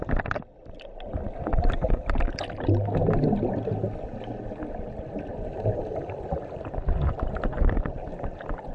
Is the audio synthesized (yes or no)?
no